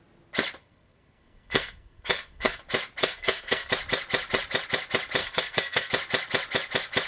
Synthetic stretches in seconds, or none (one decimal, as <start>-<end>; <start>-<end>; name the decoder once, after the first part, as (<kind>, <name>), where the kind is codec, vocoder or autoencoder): 0.6-2.6 (codec, SNAC); 3.0-3.7; 5.2-5.9